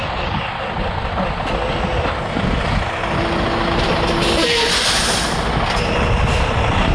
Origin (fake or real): real